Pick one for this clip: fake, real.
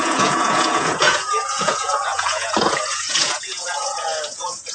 fake